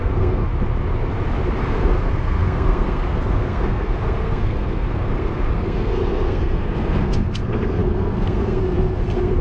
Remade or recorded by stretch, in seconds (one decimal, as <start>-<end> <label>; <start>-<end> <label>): 0.0-0.5 remade; 0.5-1.6 recorded; 1.6-9.4 remade